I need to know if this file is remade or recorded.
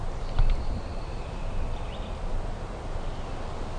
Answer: recorded